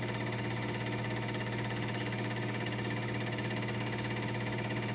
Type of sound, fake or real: fake